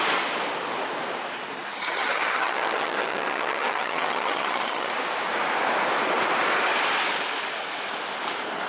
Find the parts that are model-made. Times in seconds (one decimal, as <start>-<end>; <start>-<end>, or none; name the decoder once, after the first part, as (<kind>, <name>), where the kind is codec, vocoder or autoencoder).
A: 1.7-4.9 (vocoder, HiFi-GAN)